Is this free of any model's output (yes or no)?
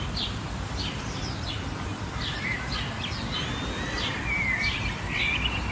no